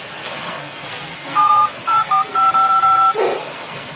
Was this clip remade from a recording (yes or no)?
yes